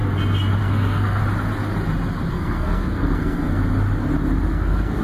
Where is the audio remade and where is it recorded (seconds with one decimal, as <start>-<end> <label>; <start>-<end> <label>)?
0.0-0.6 recorded; 0.6-1.2 remade; 1.2-2.3 recorded; 2.3-3.6 remade; 3.6-4.5 recorded; 4.5-5.0 remade